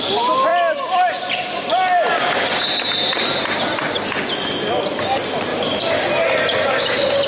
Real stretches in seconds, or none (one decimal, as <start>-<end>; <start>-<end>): 0.0-7.3

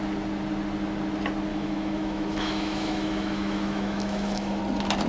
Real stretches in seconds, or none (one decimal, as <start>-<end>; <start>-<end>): 0.0-1.5; 4.6-5.1

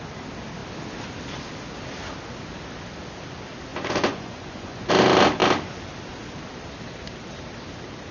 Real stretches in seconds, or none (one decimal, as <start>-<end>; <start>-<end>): 0.0-3.7; 4.9-8.1

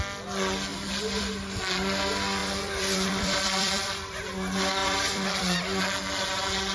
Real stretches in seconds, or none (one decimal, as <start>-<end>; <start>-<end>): 0.0-0.7; 1.2-2.4; 4.1-4.8; 5.8-6.7